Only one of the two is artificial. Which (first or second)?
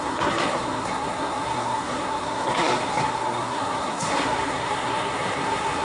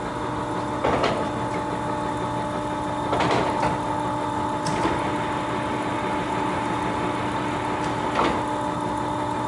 first